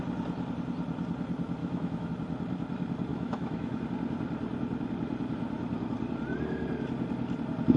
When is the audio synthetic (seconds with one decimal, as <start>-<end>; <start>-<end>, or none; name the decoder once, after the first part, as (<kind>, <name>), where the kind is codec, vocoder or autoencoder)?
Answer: 1.6-2.1 (autoencoder, DAC-VAE); 3.1-3.8